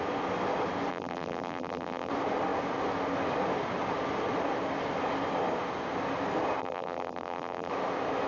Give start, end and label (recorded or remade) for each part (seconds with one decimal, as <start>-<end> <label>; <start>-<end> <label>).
0.0-0.9 recorded; 0.9-2.1 remade; 2.1-6.6 recorded; 6.6-7.7 remade; 7.7-8.3 recorded